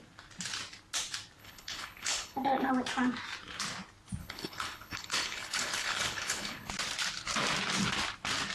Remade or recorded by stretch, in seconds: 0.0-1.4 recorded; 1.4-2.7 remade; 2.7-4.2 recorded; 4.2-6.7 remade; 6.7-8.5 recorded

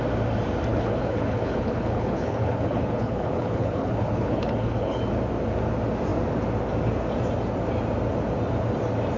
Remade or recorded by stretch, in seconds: 0.0-0.7 recorded; 0.7-5.0 remade; 5.0-9.2 recorded